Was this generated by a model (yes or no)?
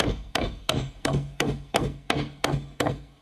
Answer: yes